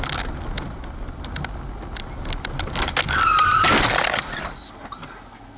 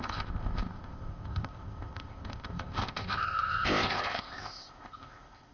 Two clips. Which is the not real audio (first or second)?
second